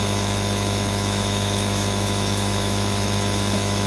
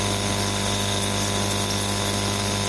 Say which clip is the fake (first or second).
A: first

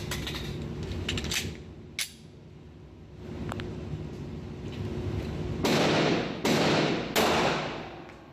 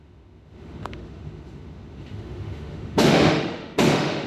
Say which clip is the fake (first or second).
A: second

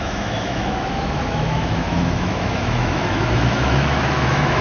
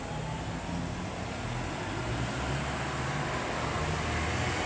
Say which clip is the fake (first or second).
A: first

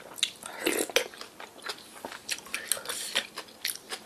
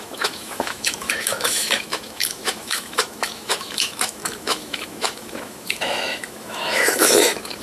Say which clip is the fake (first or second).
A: second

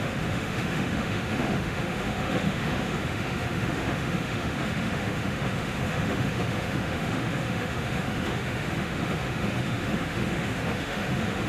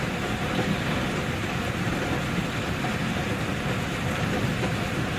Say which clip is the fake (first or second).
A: first